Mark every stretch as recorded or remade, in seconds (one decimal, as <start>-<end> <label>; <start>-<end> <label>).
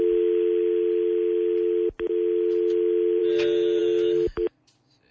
0.0-5.1 recorded